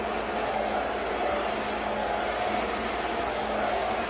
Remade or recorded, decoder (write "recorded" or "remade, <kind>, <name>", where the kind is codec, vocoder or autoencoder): recorded